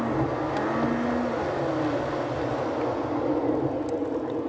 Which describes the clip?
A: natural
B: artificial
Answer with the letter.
A